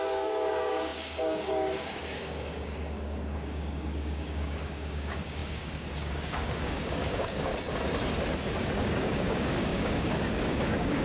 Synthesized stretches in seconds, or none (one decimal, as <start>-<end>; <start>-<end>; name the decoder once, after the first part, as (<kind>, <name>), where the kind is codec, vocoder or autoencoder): 0.0-7.5 (codec, DAC); 8.6-11.0